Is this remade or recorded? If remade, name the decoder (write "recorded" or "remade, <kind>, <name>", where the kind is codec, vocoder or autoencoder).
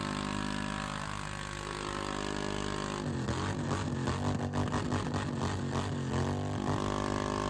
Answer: recorded